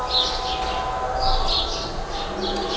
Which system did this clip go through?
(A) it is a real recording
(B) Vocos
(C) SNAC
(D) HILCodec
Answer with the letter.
A